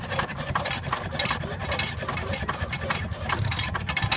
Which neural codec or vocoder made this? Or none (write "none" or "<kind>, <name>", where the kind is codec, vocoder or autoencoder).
vocoder, BigVGAN v2